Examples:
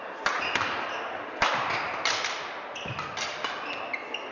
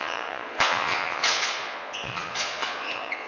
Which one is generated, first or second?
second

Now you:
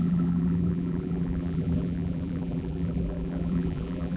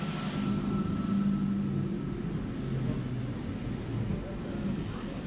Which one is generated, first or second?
first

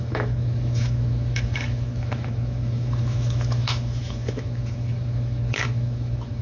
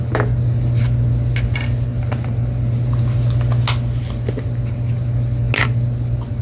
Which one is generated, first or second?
first